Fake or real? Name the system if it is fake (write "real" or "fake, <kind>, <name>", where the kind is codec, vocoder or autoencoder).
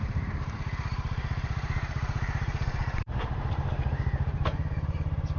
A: fake, vocoder, BigVGAN v2